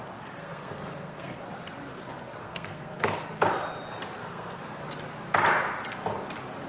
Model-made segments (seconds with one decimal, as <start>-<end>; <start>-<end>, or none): 0.4-1.4; 2.4-3.2; 4.2-4.8